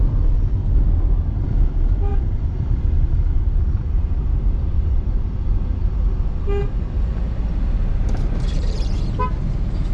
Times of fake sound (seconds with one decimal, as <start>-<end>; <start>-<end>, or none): 2.1-5.9; 7.9-9.0